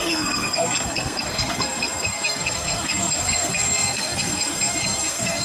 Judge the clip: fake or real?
fake